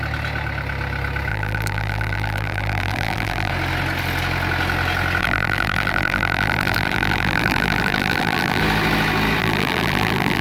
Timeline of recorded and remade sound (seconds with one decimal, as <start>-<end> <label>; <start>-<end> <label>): 0.0-1.3 recorded; 1.3-3.5 remade; 3.5-5.2 recorded; 5.2-8.6 remade; 8.6-9.4 recorded; 9.4-10.4 remade